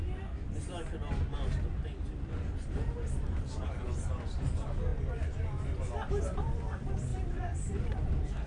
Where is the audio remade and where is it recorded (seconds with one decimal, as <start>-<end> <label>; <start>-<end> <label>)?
0.0-7.1 recorded; 7.1-8.1 remade; 8.1-8.5 recorded